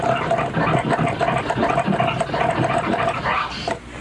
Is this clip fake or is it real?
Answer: real